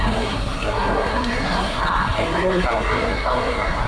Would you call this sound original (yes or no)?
no